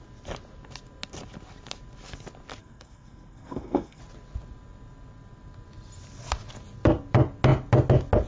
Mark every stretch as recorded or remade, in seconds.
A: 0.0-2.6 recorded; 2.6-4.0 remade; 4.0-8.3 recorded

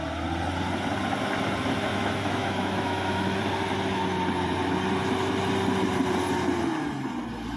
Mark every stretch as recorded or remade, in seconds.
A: 0.0-1.9 recorded; 1.9-3.4 remade; 3.4-7.6 recorded

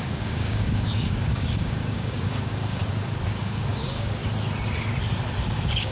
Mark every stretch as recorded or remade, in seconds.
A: 0.0-2.8 remade; 2.8-3.4 recorded; 3.4-4.2 remade; 4.2-5.4 recorded; 5.4-5.9 remade

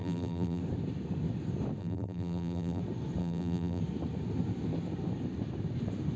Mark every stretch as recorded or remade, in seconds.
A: 0.0-0.6 remade; 0.6-1.8 recorded; 1.8-2.8 remade; 2.8-3.2 recorded; 3.2-3.8 remade; 3.8-6.2 recorded

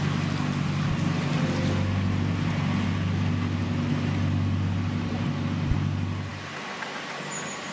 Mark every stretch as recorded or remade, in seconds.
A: 0.0-7.7 recorded

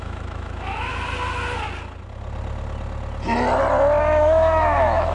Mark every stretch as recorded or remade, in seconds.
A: 0.0-0.9 remade; 0.9-4.0 recorded; 4.0-5.1 remade